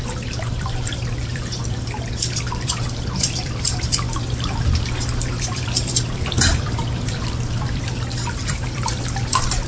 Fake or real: fake